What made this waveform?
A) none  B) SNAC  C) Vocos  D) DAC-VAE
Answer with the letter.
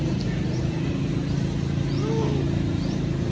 A